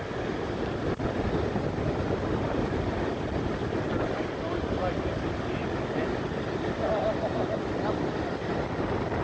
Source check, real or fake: real